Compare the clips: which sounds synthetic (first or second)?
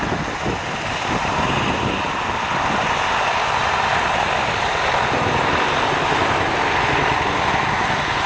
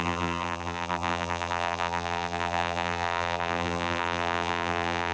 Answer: second